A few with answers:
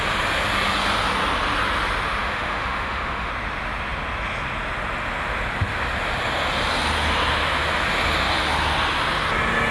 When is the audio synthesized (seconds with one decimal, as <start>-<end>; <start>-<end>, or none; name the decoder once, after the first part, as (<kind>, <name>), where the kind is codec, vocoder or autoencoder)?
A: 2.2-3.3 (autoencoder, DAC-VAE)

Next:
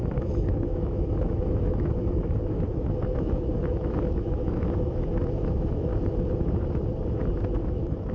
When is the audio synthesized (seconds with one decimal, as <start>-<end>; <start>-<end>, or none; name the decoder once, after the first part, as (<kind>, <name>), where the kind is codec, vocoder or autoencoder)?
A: 0.0-5.9 (autoencoder, DAC-VAE); 7.5-8.1

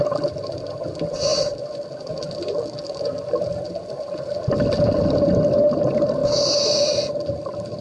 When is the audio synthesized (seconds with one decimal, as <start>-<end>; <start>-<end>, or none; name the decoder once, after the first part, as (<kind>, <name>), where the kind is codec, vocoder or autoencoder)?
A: none

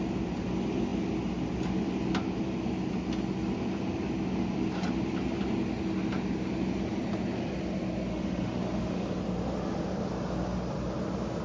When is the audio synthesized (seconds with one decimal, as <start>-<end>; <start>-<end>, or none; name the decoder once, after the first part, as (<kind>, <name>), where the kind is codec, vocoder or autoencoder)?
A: 8.1-9.2 (autoencoder, DAC-VAE)